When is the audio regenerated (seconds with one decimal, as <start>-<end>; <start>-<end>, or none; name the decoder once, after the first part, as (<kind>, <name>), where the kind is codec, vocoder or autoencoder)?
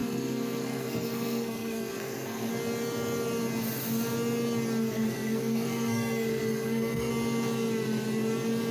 0.0-2.5 (codec, SNAC); 4.8-7.1